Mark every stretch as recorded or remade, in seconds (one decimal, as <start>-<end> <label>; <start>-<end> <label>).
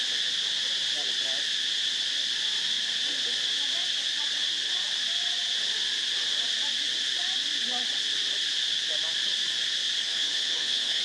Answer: 0.0-10.0 recorded; 10.0-11.0 remade